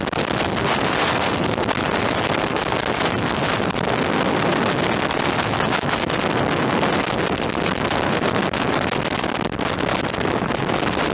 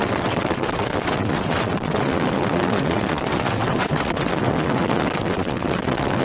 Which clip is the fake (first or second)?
second